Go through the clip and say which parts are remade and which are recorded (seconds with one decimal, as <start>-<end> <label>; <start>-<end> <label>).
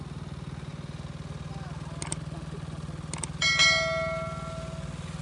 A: 0.0-5.2 recorded